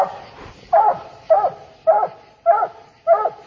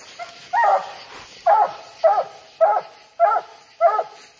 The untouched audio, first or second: second